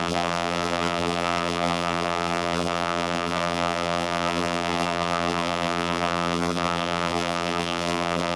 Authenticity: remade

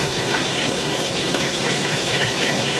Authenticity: remade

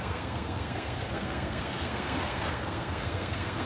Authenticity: remade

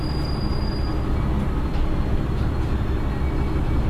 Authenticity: recorded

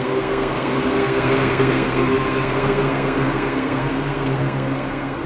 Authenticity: remade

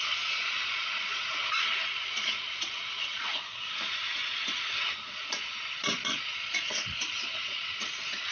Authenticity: remade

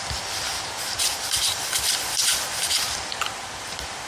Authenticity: remade